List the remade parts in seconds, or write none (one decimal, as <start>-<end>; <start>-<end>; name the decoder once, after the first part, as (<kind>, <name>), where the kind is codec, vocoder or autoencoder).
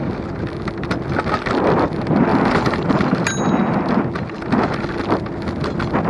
2.3-3.0 (vocoder, BigVGAN v2)